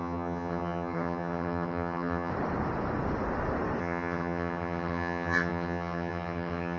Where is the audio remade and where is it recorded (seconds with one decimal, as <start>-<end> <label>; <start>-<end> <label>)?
0.0-2.3 remade; 2.3-3.8 recorded; 3.8-6.8 remade